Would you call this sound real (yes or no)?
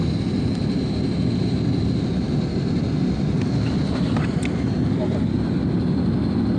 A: yes